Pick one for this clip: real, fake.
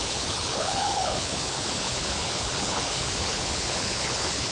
fake